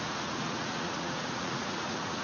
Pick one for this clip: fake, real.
fake